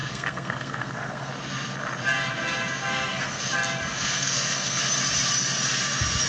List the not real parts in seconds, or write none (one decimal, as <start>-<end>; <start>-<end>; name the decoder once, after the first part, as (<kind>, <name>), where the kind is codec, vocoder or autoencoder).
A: 0.0-1.3 (codec, SNAC); 2.9-3.4; 3.9-4.8